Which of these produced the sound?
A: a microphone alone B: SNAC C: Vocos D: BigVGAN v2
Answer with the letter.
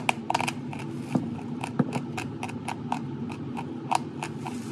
A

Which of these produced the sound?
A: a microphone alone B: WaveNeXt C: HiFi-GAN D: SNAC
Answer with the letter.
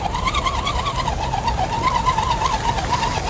A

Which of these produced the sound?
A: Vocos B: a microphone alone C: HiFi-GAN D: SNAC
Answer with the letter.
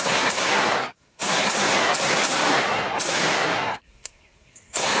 D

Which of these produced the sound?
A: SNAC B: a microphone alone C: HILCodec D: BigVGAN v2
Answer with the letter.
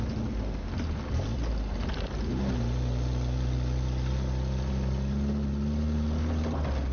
B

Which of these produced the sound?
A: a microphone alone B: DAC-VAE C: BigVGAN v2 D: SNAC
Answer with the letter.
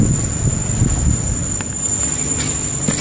A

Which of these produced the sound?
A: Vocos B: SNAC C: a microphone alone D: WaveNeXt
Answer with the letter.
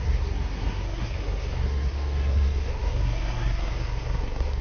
B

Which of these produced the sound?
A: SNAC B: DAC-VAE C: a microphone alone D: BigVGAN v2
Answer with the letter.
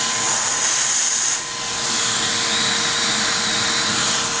C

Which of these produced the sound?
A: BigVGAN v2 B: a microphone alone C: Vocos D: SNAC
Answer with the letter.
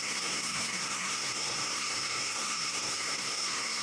D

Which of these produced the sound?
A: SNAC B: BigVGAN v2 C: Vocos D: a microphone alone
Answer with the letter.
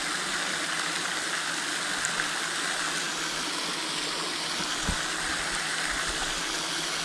D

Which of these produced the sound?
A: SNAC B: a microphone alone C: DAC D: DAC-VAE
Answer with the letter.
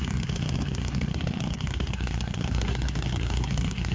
A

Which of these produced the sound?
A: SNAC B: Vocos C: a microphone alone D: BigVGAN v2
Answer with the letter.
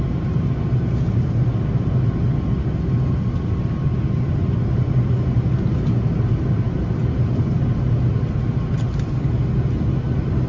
C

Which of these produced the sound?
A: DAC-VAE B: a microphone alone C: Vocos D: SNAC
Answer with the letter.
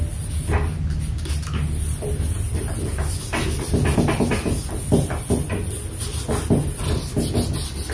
B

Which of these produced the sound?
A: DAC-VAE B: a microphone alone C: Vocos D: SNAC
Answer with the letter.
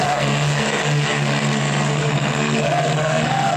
D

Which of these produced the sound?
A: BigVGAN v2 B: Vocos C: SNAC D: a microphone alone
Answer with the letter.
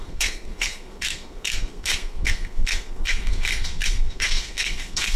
C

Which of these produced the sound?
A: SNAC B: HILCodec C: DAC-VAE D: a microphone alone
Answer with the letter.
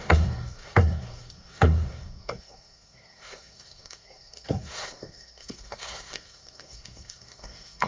A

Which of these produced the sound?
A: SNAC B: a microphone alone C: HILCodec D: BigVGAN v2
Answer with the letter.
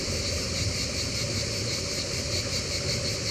B